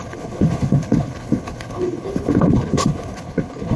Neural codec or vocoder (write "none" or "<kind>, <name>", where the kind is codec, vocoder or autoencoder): codec, HILCodec